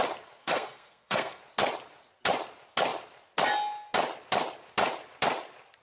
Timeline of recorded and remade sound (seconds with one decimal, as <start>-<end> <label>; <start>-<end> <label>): 0.0-0.4 recorded; 0.4-1.4 remade; 1.4-5.8 recorded

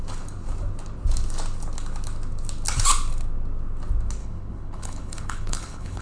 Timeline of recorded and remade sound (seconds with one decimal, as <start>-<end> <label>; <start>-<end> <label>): 0.0-4.2 recorded; 4.2-6.0 remade

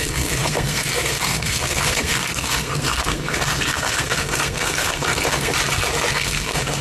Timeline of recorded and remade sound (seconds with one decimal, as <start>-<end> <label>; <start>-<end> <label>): 0.0-5.5 remade; 5.5-6.1 recorded; 6.1-6.8 remade

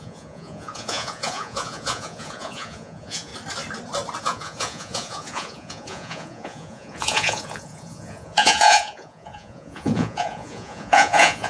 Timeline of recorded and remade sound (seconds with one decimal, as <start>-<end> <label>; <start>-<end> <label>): 0.0-3.3 remade; 3.3-4.2 recorded; 4.2-11.5 remade

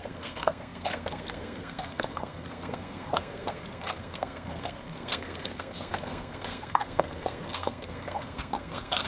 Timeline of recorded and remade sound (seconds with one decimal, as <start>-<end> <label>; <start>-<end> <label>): 0.0-9.1 remade

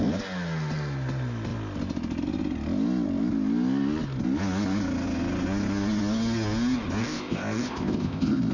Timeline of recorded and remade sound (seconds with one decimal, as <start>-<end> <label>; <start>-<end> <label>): 0.0-7.0 recorded; 7.0-8.5 remade

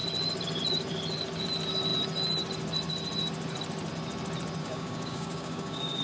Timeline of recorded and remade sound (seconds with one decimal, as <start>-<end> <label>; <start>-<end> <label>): 0.0-4.6 recorded; 4.6-6.0 remade